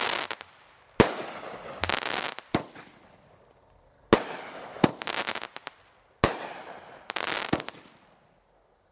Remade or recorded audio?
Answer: recorded